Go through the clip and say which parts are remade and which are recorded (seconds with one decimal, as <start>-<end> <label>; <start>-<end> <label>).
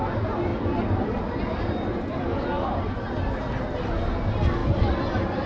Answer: 0.0-0.5 recorded; 0.5-3.8 remade; 3.8-4.6 recorded; 4.6-5.5 remade